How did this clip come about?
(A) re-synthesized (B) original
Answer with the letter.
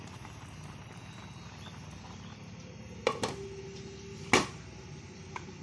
B